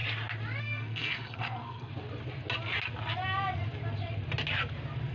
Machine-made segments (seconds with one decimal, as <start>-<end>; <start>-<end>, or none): 0.6-1.9